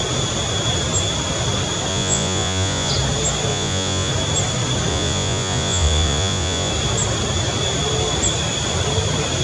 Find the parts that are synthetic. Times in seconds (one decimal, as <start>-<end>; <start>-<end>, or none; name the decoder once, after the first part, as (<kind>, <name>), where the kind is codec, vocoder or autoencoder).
1.9-2.9 (vocoder, Vocos); 3.5-4.1; 4.9-6.7